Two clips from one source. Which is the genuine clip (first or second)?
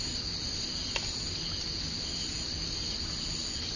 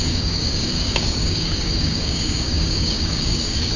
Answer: first